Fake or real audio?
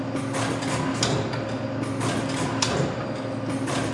real